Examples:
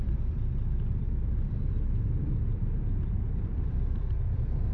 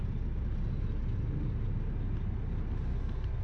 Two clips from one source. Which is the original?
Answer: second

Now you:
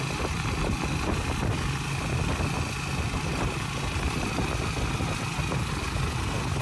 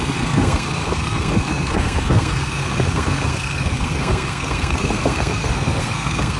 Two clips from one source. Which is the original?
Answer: first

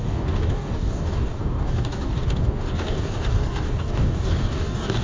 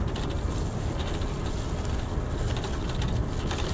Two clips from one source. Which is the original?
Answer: second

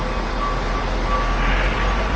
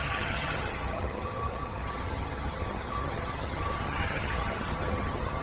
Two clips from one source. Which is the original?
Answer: first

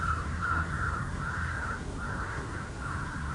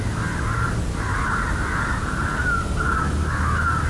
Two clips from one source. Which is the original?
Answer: second